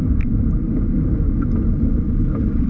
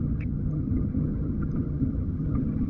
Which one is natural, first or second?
first